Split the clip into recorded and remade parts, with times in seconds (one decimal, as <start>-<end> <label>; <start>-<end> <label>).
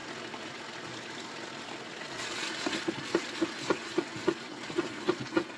0.0-3.4 recorded; 3.4-5.6 remade